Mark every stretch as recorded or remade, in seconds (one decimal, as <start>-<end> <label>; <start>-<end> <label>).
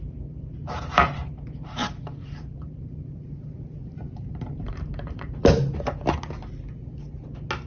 0.0-1.8 recorded; 1.8-5.5 remade; 5.5-7.7 recorded